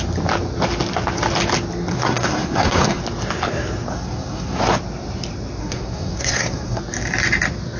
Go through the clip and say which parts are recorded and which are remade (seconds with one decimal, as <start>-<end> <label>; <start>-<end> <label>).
0.0-1.9 recorded; 1.9-3.0 remade; 3.0-3.9 recorded; 3.9-4.6 remade; 4.6-5.6 recorded; 5.6-6.8 remade; 6.8-7.8 recorded